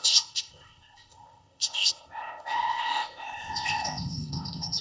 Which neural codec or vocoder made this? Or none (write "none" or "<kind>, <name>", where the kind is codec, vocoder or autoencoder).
codec, ZipCodec